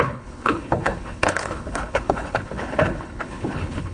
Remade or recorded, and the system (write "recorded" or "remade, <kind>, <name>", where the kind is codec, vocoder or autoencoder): remade, codec, HILCodec